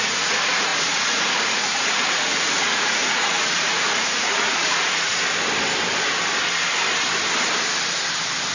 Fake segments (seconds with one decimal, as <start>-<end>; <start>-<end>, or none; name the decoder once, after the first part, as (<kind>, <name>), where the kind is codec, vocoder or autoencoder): 0.0-5.1 (vocoder, Vocos)